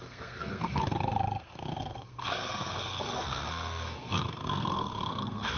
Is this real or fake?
fake